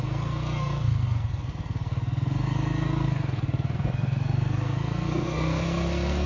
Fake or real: fake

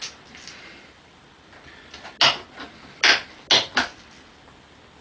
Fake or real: real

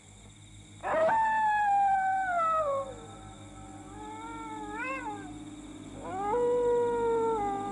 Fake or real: real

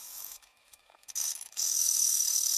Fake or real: fake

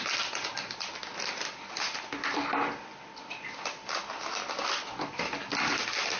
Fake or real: real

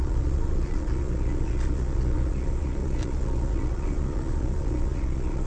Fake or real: fake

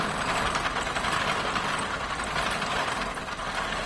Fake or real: real